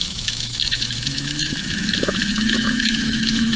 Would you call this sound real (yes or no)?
no